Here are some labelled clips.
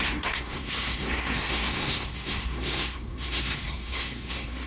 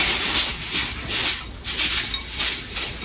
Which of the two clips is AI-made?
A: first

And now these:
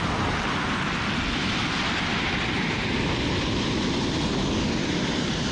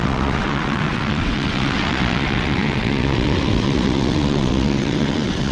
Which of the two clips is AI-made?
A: second